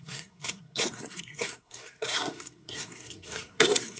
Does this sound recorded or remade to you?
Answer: remade